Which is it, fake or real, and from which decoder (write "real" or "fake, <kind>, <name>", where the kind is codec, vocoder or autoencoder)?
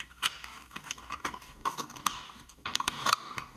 fake, codec, DAC